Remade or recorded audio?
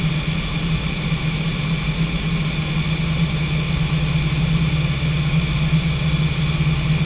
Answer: recorded